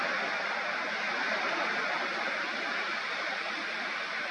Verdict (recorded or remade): recorded